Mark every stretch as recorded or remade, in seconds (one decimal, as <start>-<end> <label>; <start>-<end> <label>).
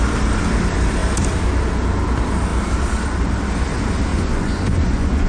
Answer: 0.0-4.1 recorded; 4.1-5.3 remade